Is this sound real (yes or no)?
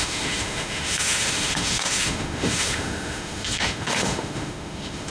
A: no